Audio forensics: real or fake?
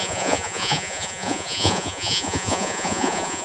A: fake